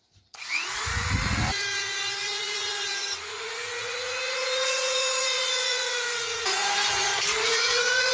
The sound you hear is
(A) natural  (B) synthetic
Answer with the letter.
B